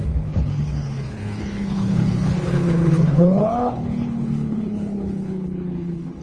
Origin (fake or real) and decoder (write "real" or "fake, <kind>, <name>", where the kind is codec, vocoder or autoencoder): fake, codec, HILCodec